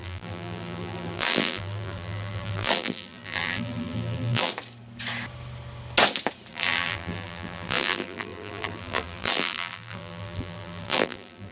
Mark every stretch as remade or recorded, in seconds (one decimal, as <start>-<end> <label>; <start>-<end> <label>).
0.0-4.5 remade; 4.5-6.5 recorded; 6.5-11.5 remade